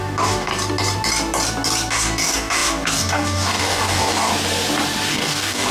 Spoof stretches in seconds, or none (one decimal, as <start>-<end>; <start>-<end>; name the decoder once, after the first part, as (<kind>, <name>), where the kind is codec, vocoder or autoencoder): 0.0-0.5 (codec, DAC); 1.9-4.3; 5.1-5.7